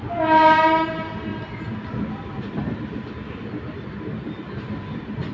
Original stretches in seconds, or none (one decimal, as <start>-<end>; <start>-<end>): 0.0-5.3